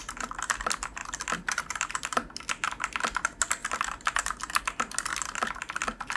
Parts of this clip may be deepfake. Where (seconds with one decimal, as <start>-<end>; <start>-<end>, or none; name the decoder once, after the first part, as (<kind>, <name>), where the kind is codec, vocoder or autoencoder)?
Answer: 1.0-2.3 (vocoder, BigVGAN v2); 3.6-4.6; 5.1-6.2